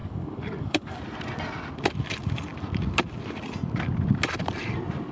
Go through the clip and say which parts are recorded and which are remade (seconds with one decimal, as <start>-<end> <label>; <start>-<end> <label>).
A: 0.0-1.0 remade; 1.0-5.1 recorded